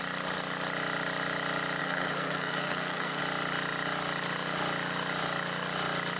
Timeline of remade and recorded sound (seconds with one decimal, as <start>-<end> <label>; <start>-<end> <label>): 0.0-1.8 recorded; 1.8-3.2 remade; 3.2-6.2 recorded